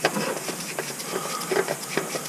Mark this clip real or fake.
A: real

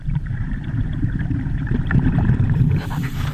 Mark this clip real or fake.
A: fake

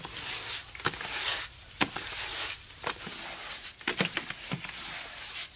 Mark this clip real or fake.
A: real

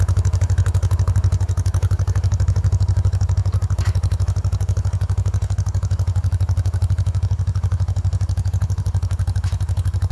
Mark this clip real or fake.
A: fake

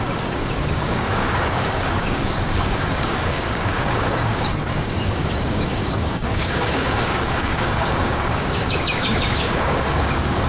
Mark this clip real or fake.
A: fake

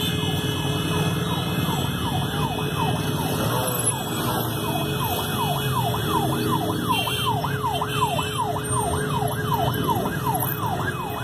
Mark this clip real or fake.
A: real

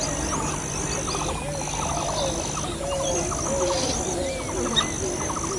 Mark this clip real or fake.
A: real